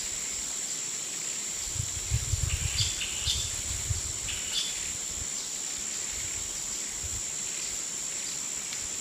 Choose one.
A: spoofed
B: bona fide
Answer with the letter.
B